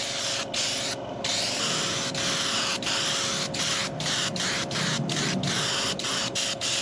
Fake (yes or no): no